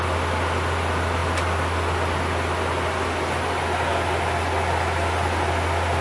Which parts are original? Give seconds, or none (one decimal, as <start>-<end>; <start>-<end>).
0.0-6.0